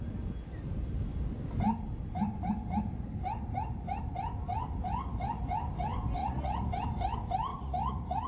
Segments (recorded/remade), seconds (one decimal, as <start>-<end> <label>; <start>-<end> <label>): 0.0-6.2 recorded; 6.2-6.7 remade; 6.7-7.5 recorded; 7.5-8.3 remade